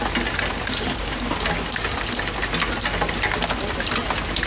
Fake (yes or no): no